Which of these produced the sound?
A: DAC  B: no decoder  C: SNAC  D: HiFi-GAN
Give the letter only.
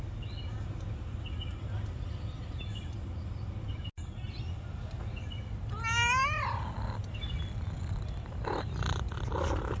B